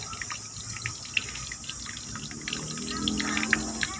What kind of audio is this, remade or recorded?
recorded